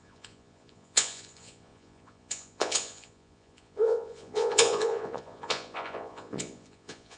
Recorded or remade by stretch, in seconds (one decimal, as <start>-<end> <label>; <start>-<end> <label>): 0.0-7.2 remade